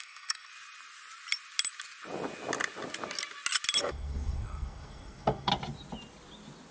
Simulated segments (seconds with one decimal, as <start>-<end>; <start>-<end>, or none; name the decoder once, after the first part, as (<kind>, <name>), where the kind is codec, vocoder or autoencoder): 0.0-0.5 (codec, SNAC); 3.8-5.5